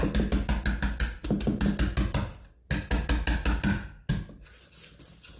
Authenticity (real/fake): real